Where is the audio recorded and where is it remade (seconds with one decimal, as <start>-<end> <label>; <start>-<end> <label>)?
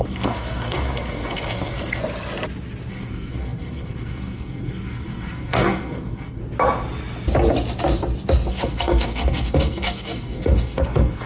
0.0-2.0 remade; 2.0-2.9 recorded; 2.9-6.4 remade; 6.4-8.5 recorded; 8.5-11.3 remade